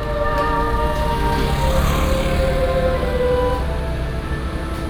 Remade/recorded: recorded